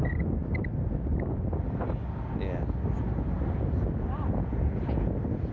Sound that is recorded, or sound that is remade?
recorded